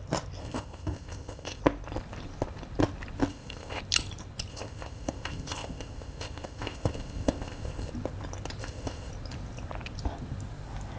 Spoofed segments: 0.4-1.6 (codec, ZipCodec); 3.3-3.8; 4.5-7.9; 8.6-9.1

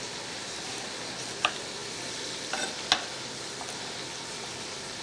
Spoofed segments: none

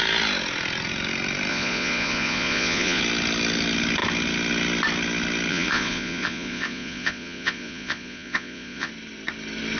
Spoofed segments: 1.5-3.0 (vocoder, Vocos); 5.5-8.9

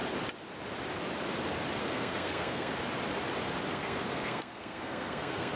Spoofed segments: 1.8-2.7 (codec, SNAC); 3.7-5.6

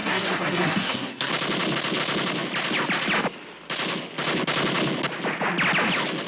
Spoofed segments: 0.0-1.3 (codec, SNAC)